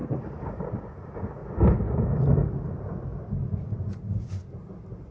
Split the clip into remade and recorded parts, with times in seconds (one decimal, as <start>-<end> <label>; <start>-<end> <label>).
0.0-5.1 recorded